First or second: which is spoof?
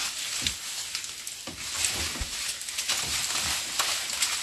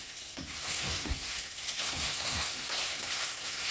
second